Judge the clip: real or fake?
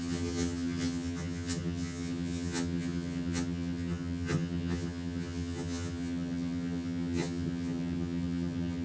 fake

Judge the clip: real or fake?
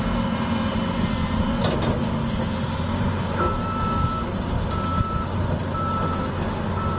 real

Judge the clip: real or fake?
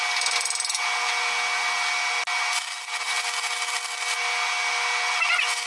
real